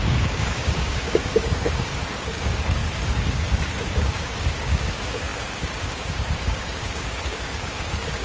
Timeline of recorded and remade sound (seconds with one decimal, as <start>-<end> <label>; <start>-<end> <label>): 0.0-8.2 remade